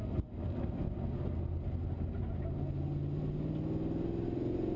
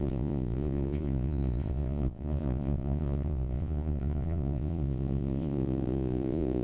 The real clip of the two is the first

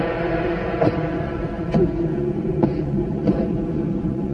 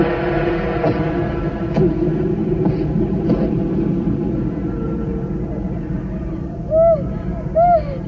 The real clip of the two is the second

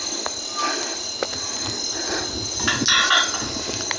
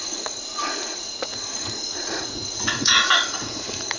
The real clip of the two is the first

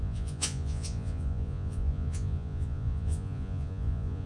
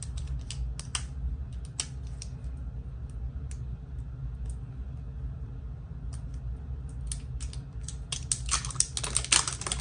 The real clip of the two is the second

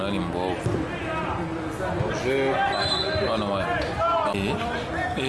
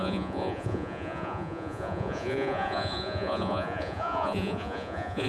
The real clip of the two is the first